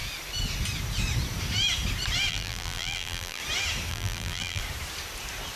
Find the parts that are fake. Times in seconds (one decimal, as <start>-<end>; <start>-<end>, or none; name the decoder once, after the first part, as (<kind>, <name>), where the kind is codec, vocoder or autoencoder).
2.3-3.4 (vocoder, BigVGAN v2); 3.9-4.6